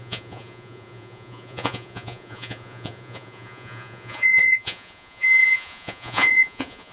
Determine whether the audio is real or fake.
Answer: fake